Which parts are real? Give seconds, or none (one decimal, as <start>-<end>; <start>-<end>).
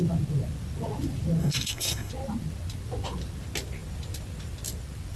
0.0-1.4; 2.1-5.2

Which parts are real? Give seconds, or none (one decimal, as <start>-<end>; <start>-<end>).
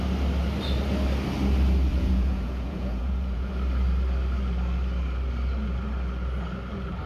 0.0-1.9; 3.5-7.1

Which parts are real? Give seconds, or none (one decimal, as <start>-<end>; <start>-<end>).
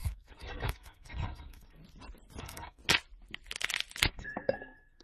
1.8-2.4; 2.8-4.1